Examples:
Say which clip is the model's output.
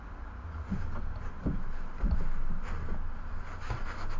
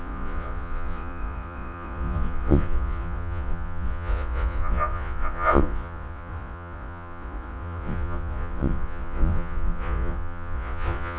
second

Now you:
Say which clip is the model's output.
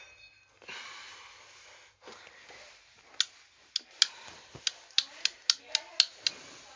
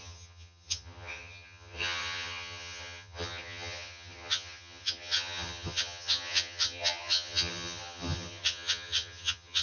second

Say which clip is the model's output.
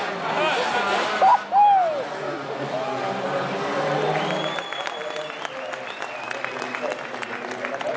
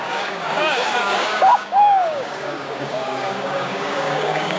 second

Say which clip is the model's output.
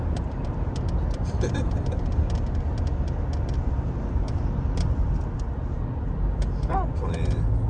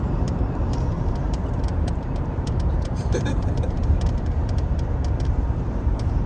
second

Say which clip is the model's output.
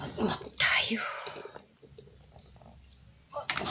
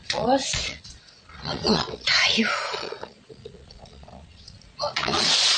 second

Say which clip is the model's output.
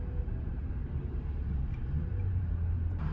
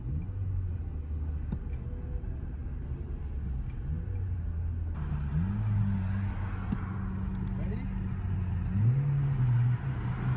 first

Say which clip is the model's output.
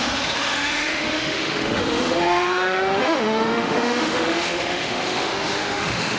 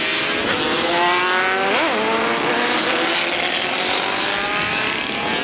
first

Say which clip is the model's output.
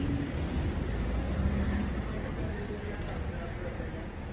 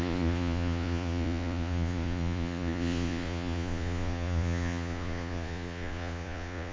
second